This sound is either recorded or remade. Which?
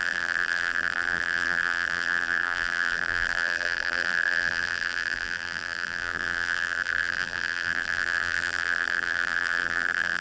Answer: remade